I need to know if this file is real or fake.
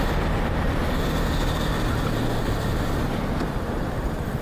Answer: real